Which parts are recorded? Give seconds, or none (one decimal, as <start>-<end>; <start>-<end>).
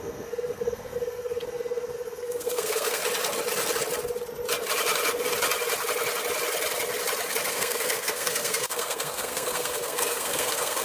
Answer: 3.0-7.5